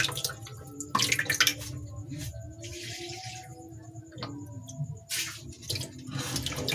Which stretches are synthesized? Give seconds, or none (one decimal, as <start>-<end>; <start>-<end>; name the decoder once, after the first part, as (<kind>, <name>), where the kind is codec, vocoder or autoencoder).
none